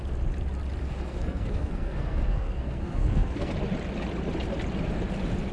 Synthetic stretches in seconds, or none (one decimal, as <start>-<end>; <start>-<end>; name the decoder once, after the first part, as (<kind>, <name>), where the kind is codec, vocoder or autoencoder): 0.8-3.5 (codec, SNAC)

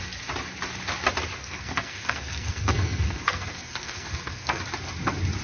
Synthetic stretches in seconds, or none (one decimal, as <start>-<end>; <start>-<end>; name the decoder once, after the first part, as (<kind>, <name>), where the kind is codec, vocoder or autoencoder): 1.4-4.6 (codec, SNAC)

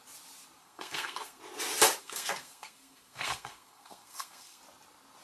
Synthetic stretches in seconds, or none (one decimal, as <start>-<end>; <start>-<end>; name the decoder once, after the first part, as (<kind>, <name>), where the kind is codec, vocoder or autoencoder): 0.6-1.4 (codec, SNAC); 2.0-4.6

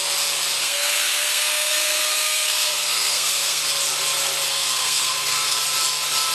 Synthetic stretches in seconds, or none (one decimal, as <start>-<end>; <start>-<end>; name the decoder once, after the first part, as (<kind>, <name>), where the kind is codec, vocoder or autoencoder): 0.6-3.6 (codec, SNAC); 4.5-5.6

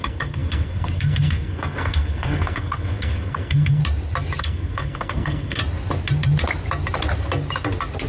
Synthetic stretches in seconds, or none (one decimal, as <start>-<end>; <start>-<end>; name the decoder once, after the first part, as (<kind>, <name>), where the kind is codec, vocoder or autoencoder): 0.0-3.8 (codec, SNAC); 4.4-5.6

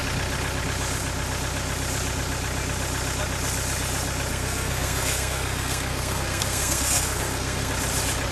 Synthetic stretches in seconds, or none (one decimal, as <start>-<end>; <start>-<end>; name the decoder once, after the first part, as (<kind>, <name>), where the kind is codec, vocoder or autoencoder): 4.3-7.7 (codec, SNAC)